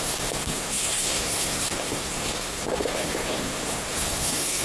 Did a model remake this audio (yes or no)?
yes